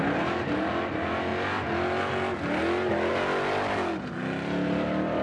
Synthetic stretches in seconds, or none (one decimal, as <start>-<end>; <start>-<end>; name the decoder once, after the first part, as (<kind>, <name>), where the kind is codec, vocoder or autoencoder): none